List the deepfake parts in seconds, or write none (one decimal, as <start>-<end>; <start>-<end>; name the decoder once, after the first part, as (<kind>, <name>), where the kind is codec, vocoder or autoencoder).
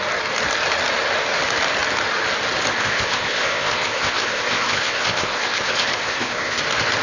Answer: 2.7-6.6 (codec, ZipCodec)